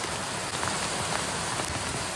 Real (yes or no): yes